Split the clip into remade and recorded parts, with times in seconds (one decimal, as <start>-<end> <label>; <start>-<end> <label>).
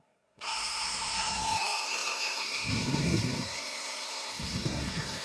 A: 0.0-5.2 remade